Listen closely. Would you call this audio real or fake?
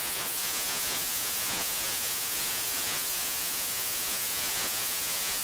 fake